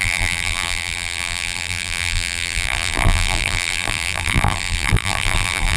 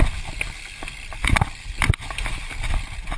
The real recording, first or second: second